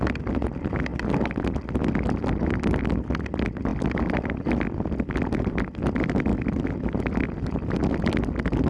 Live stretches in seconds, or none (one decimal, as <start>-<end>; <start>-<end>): 0.0-8.7